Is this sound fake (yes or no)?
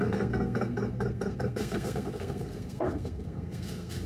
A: yes